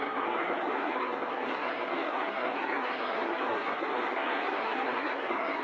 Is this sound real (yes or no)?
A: no